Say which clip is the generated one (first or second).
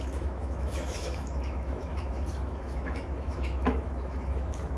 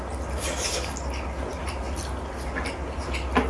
first